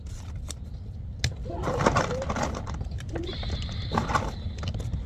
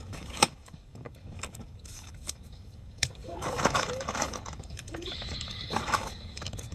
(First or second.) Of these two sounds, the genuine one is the first